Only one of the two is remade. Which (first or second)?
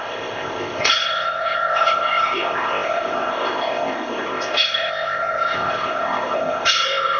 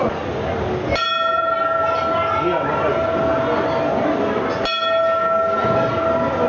first